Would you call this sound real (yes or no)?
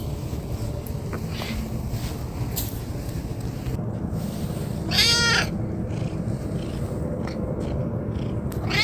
yes